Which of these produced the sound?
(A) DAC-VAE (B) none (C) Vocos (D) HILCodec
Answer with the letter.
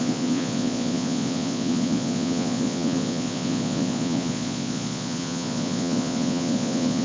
C